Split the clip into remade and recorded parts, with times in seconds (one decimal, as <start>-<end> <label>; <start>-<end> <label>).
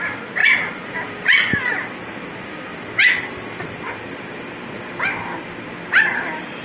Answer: 0.0-6.6 recorded